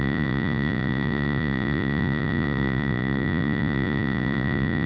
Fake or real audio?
fake